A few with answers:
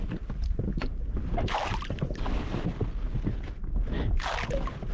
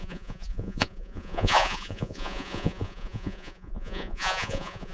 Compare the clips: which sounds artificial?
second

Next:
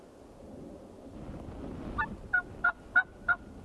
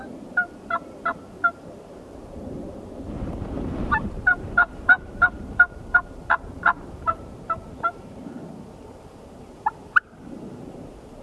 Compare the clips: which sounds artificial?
second